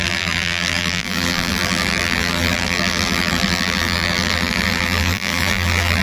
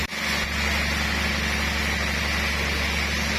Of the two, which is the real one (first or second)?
second